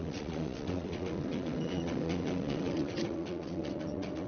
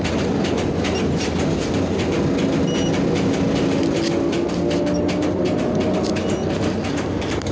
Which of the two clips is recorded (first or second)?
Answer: second